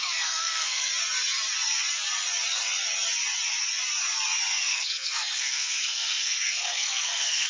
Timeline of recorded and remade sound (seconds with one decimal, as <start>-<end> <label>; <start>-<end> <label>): 0.0-0.9 remade; 0.9-4.6 recorded; 4.6-7.5 remade